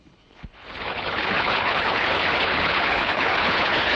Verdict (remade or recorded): remade